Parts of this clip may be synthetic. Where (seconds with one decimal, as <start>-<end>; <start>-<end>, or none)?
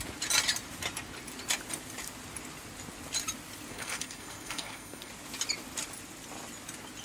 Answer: 3.7-5.1